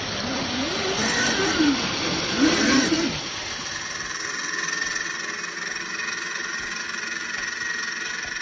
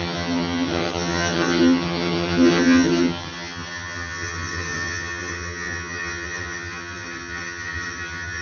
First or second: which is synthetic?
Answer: second